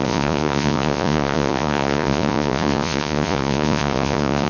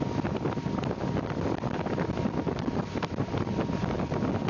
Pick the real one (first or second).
second